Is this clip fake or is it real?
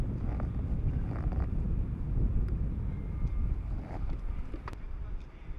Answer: fake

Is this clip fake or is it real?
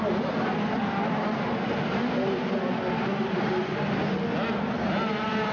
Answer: real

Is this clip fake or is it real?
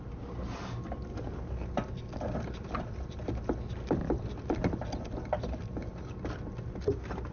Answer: real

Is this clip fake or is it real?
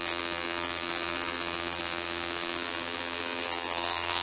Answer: fake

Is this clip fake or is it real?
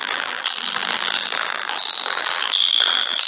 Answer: fake